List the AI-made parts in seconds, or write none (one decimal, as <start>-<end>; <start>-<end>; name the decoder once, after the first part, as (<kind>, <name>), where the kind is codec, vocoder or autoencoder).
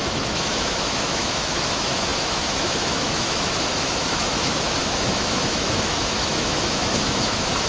0.0-7.7 (autoencoder, DAC-VAE)